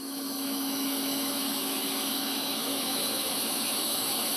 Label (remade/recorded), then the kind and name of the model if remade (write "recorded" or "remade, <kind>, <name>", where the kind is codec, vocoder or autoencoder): remade, autoencoder, DAC-VAE